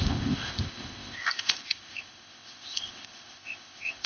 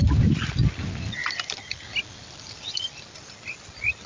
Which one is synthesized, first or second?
first